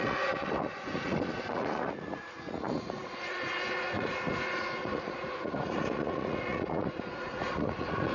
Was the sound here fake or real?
fake